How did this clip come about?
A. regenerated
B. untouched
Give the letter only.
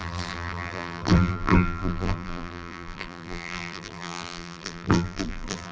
A